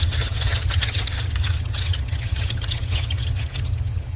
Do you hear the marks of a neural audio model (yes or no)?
yes